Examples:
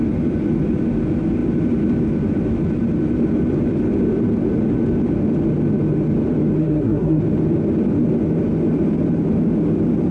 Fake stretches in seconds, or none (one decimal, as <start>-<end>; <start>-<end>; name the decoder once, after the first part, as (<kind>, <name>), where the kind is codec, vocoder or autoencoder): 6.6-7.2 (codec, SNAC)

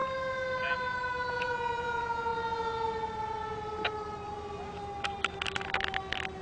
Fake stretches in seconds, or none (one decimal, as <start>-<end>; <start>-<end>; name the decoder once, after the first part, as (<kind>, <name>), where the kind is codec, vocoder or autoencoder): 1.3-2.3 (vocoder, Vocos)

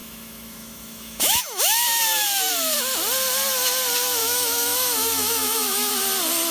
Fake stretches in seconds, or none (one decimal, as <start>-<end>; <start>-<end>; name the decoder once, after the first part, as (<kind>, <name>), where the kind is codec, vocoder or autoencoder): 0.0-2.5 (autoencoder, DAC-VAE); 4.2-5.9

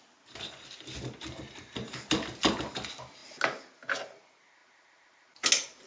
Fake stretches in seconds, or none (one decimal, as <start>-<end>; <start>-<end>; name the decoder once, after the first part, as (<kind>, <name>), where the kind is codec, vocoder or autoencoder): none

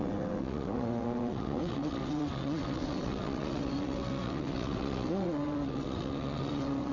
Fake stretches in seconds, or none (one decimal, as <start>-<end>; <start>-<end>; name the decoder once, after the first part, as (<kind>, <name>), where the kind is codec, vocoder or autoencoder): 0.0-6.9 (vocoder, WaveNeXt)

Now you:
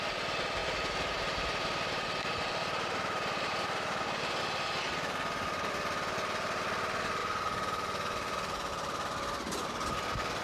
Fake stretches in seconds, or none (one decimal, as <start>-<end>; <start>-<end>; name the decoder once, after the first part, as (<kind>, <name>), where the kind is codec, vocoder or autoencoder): 0.6-4.4 (vocoder, BigVGAN v2)